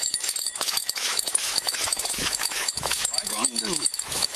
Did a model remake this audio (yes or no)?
yes